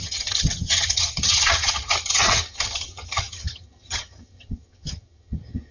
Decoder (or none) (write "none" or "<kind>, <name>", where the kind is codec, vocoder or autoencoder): vocoder, HiFi-GAN